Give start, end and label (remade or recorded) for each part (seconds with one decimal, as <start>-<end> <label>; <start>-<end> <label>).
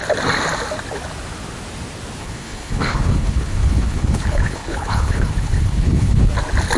0.0-2.2 recorded; 2.2-6.3 remade; 6.3-6.8 recorded